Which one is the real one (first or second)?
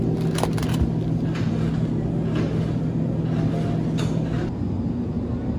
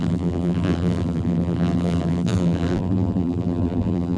first